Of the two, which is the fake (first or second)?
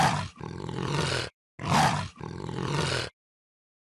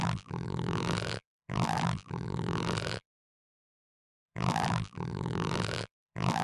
second